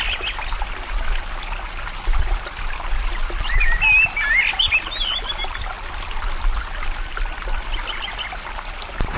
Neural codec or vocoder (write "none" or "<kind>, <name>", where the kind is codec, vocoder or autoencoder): none